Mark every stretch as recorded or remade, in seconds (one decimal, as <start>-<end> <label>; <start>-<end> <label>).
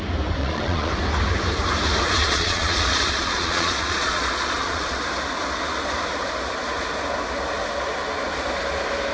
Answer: 0.0-0.4 recorded; 0.4-0.9 remade; 0.9-2.2 recorded; 2.2-5.0 remade; 5.0-9.1 recorded